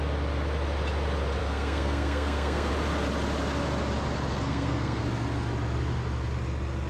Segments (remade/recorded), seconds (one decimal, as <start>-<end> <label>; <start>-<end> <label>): 0.0-1.4 recorded; 1.4-2.7 remade; 2.7-4.3 recorded; 4.3-5.0 remade; 5.0-6.9 recorded